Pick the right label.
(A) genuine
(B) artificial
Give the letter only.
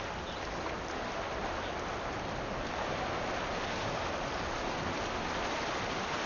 A